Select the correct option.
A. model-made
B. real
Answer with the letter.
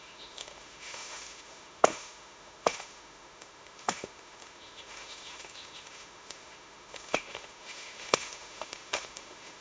A